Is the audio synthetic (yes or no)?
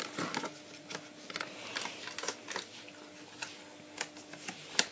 no